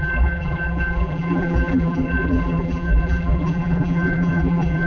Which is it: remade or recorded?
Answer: remade